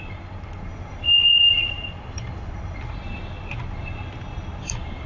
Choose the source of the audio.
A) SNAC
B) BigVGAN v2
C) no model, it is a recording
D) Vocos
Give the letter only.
C